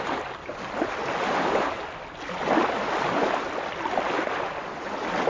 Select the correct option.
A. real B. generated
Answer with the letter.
A